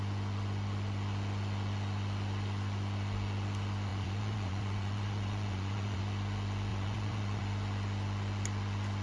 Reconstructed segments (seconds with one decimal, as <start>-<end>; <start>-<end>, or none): 3.9-6.0; 6.7-7.4